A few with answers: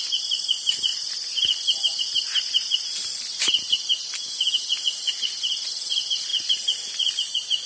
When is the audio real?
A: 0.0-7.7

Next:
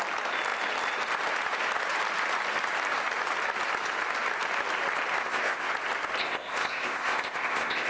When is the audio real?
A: 0.0-5.2; 5.7-6.2